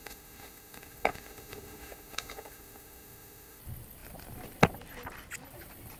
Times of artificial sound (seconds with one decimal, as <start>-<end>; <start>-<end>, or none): 0.0-3.6